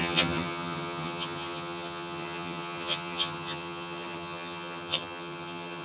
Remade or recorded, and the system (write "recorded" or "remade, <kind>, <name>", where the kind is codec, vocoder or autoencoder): remade, vocoder, HiFi-GAN